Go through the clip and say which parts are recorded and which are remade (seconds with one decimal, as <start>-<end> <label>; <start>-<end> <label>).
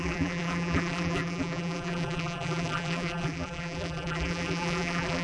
0.0-5.2 remade